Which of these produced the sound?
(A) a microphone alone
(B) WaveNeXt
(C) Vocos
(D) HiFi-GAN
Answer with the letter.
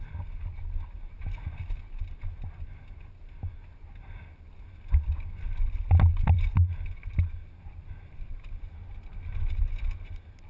A